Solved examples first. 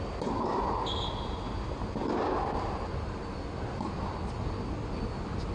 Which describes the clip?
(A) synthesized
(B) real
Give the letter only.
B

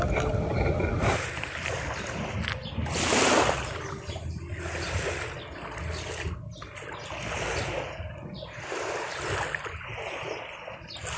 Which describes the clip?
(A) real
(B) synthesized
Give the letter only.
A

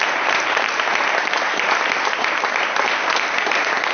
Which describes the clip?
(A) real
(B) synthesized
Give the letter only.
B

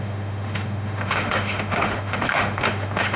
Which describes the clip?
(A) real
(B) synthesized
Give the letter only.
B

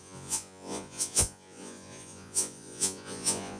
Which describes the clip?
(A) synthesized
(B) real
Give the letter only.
A